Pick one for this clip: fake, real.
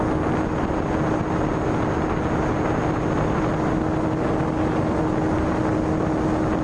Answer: real